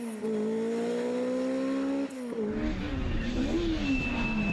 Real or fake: real